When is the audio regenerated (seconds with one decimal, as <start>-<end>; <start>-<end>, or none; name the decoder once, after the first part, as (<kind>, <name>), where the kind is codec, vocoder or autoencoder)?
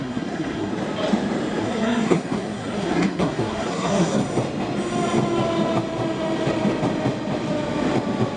0.0-0.7 (codec, SNAC); 1.6-4.2